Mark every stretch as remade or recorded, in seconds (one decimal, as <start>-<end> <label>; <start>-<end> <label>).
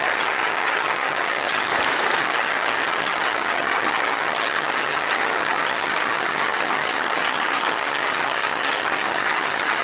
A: 0.0-1.7 remade; 1.7-2.2 recorded; 2.2-9.8 remade